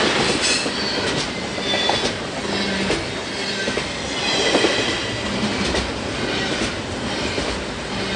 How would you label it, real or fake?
real